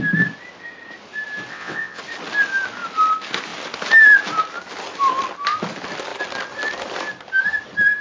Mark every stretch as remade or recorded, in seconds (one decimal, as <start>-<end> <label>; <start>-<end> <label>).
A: 0.0-1.5 recorded; 1.5-2.0 remade; 2.0-8.0 recorded